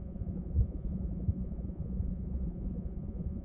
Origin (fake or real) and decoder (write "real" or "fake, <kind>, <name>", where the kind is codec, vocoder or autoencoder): fake, vocoder, Vocos